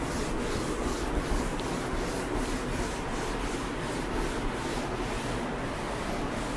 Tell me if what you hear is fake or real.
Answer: real